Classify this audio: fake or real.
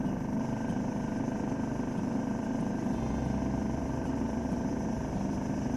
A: fake